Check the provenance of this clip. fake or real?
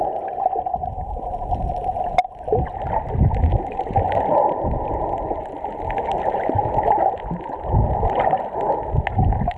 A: real